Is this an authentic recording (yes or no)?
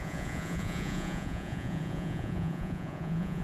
no